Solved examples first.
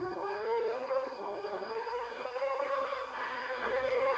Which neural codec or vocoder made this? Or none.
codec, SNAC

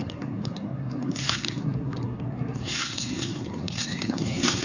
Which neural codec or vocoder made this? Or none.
codec, SNAC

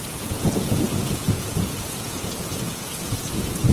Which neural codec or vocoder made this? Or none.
vocoder, Vocos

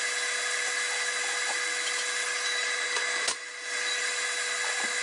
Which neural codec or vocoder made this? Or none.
none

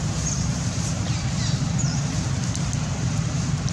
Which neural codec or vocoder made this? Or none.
vocoder, BigVGAN v2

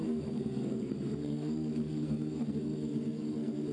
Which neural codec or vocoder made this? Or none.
codec, SNAC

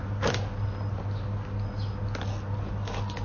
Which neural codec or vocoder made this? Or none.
none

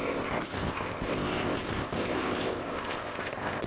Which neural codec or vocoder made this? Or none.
codec, ZipCodec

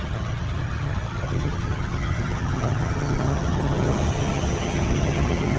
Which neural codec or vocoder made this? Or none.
vocoder, HiFi-GAN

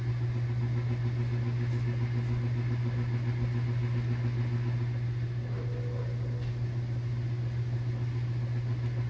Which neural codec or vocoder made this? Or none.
none